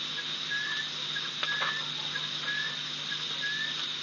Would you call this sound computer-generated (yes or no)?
no